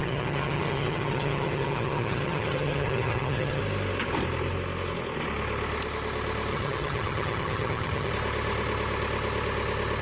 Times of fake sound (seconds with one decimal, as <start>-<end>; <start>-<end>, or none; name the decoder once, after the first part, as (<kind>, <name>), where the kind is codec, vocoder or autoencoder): 0.0-3.6 (vocoder, HiFi-GAN); 6.5-8.1